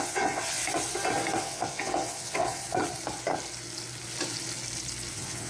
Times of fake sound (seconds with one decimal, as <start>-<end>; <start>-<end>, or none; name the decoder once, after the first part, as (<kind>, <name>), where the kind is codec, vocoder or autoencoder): 0.0-0.6 (vocoder, WaveNeXt); 1.4-2.6; 5.1-5.5